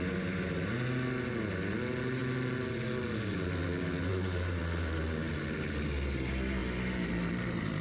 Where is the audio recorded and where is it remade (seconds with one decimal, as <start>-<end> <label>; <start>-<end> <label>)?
0.0-4.1 recorded; 4.1-4.6 remade; 4.6-7.8 recorded